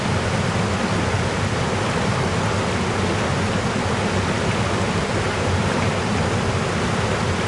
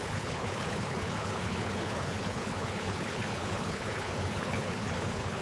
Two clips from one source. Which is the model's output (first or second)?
second